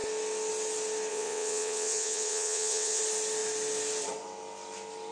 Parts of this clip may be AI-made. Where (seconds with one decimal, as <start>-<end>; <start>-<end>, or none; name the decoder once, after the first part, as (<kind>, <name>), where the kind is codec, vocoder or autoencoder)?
1.1-3.0 (vocoder, WaveNeXt)